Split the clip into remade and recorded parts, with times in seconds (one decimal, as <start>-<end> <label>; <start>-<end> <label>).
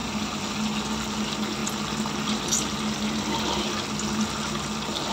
0.0-5.1 recorded